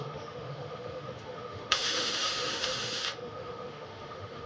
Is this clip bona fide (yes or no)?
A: no